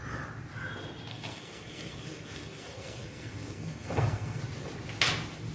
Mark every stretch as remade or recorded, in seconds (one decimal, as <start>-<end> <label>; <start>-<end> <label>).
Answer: 0.0-1.1 recorded; 1.1-4.4 remade; 4.4-5.5 recorded